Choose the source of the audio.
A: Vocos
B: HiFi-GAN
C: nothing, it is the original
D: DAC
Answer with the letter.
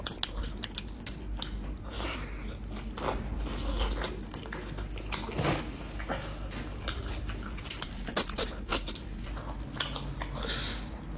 C